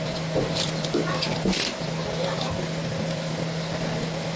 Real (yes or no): yes